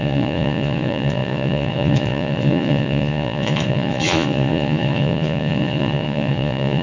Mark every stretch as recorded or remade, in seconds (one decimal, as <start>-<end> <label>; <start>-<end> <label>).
0.0-6.8 remade